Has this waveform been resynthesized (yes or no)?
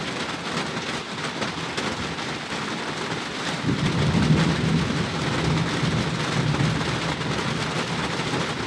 no